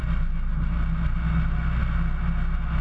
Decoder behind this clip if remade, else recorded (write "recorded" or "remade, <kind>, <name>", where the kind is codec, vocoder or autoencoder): recorded